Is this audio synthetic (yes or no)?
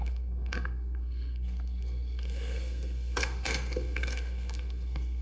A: yes